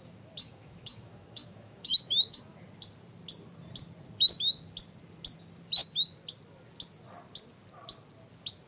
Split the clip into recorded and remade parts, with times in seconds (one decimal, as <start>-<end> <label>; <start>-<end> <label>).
0.0-0.4 recorded; 0.4-2.6 remade; 2.6-8.7 recorded